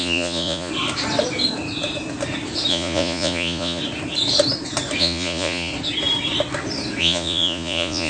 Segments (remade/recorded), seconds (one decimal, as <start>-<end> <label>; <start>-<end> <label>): 0.0-0.7 remade; 0.7-2.7 recorded; 2.7-3.8 remade; 3.8-5.0 recorded; 5.0-5.7 remade; 5.7-7.0 recorded; 7.0-8.1 remade